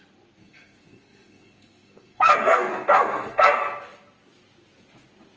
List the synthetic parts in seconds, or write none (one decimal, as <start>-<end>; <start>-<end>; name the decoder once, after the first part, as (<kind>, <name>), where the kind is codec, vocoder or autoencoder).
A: 0.4-3.6 (codec, SNAC)